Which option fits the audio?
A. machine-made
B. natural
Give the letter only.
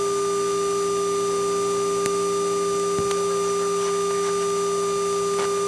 B